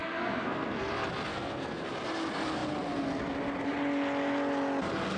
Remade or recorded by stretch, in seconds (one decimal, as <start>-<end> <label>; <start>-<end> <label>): 0.0-0.9 remade; 0.9-1.3 recorded; 1.3-1.9 remade; 1.9-5.2 recorded